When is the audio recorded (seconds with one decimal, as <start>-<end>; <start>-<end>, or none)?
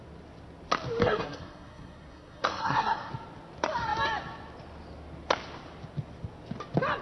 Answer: 0.0-1.0; 3.1-7.0